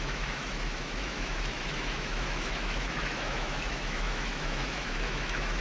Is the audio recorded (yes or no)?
no